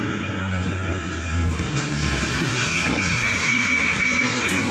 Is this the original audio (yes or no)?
no